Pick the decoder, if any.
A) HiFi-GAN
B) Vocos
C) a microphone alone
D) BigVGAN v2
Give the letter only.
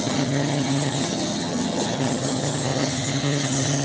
A